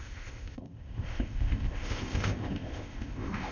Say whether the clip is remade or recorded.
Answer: remade